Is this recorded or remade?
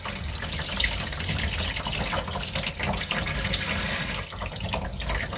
recorded